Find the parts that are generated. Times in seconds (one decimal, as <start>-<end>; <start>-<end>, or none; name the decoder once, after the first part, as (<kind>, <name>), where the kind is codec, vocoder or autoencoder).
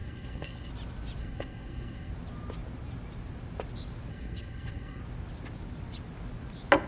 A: 0.0-0.7 (codec, SNAC); 1.2-2.1; 4.1-5.0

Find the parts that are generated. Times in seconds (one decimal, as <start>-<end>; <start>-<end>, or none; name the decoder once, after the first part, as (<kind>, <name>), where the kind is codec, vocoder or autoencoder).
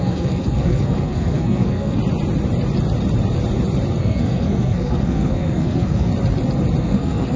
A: 0.0-2.0 (codec, SNAC); 4.0-6.1; 6.8-7.4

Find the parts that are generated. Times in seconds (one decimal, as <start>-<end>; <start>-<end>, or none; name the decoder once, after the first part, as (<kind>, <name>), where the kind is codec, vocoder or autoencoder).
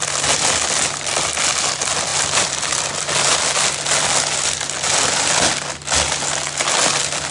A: none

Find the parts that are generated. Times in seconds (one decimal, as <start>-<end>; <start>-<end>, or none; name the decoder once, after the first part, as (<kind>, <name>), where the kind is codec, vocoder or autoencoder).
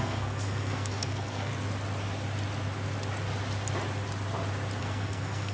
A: 0.0-1.5 (codec, SNAC); 4.8-5.5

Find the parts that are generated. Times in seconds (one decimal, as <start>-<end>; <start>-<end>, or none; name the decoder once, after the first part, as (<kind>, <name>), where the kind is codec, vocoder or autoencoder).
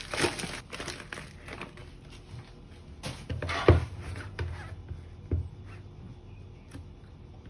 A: none